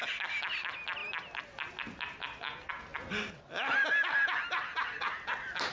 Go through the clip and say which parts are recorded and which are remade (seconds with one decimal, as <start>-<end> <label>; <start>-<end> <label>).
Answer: 0.0-5.7 recorded

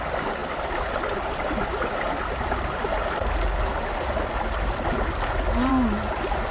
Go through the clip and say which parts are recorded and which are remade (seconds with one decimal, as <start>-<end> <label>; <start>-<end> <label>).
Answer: 0.0-6.5 recorded

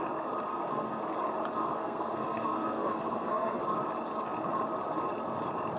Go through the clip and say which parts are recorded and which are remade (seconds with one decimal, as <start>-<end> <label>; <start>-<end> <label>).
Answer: 0.0-0.5 recorded; 0.5-1.0 remade; 1.0-1.6 recorded; 1.6-3.6 remade; 3.6-5.8 recorded

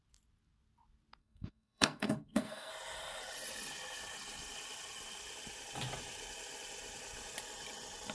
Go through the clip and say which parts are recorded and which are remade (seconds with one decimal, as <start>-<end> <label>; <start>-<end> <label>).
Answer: 0.0-1.2 recorded; 1.2-2.7 remade; 2.7-8.1 recorded

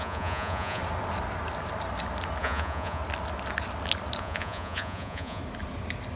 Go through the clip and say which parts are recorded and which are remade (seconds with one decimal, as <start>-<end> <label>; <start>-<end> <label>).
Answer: 0.0-0.8 remade; 0.8-2.4 recorded; 2.4-3.0 remade; 3.0-4.2 recorded; 4.2-5.4 remade; 5.4-6.2 recorded

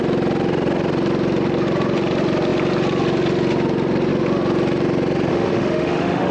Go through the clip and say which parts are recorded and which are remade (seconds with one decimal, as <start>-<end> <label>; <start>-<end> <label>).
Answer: 0.0-5.3 recorded; 5.3-6.3 remade